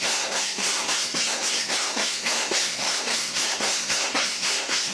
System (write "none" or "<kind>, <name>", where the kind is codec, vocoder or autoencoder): codec, SNAC